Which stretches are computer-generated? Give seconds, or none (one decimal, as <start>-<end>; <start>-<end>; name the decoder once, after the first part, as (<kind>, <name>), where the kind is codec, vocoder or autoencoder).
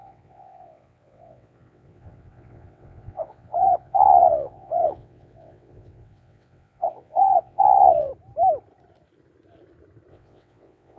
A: 0.0-8.1 (vocoder, WaveNeXt); 10.1-11.0